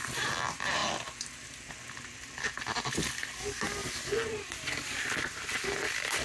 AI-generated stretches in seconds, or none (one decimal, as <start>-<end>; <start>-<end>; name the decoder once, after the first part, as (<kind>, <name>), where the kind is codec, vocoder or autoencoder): none

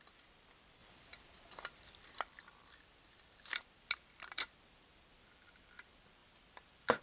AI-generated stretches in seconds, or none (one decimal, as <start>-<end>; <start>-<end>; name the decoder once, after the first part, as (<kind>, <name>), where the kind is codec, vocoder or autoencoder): 0.0-6.2 (vocoder, BigVGAN v2)

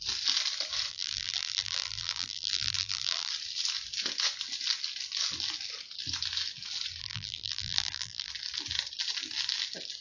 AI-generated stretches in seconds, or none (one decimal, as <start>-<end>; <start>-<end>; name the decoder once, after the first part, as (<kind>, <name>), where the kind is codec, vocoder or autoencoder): 0.9-3.3 (vocoder, BigVGAN v2); 7.0-8.3